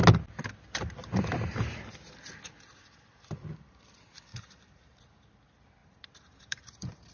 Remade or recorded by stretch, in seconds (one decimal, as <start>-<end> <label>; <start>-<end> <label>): 0.0-4.3 recorded; 4.3-5.0 remade; 5.0-5.8 recorded; 5.8-7.1 remade